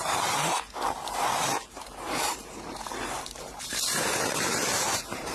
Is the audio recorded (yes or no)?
no